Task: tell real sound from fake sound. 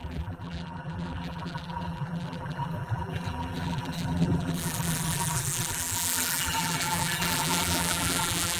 fake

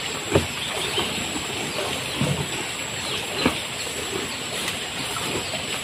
real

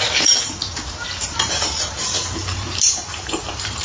fake